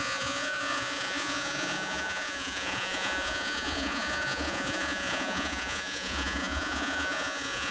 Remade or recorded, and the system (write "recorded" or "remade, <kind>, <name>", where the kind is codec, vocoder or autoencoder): remade, vocoder, Vocos